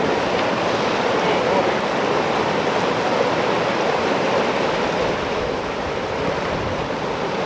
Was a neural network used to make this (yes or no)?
no